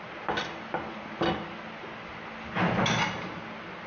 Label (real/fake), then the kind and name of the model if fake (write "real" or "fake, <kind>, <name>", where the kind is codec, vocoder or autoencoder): real